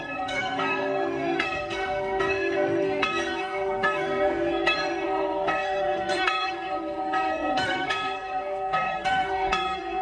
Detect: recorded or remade remade